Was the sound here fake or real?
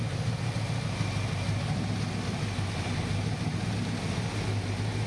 real